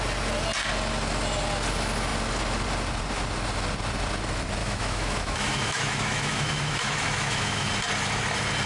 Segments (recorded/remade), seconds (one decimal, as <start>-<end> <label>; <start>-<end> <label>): 0.0-4.6 recorded; 4.6-7.7 remade; 7.7-8.7 recorded